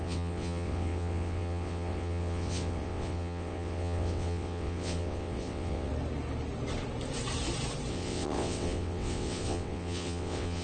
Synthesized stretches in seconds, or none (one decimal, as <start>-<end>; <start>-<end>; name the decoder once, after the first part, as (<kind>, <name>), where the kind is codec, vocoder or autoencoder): 0.0-5.9 (vocoder, WaveNeXt); 7.9-10.6